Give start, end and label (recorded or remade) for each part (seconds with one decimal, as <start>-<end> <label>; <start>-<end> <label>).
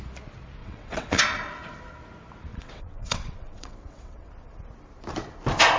0.0-0.6 recorded; 0.6-1.2 remade; 1.2-2.5 recorded; 2.5-4.3 remade; 4.3-5.8 recorded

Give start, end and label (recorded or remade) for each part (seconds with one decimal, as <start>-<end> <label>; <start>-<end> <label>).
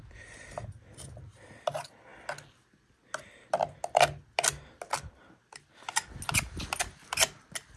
0.0-7.8 recorded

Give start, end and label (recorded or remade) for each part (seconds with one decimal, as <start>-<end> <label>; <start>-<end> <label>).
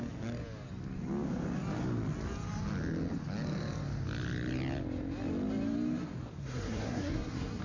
0.0-6.4 recorded; 6.4-7.6 remade